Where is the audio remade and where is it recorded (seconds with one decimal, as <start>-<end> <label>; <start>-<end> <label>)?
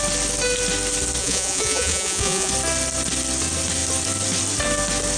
0.0-1.2 recorded; 1.2-2.5 remade; 2.5-5.2 recorded